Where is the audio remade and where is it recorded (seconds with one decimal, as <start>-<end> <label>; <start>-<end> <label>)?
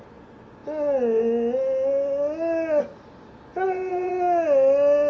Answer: 0.0-3.5 recorded; 3.5-4.1 remade; 4.1-5.1 recorded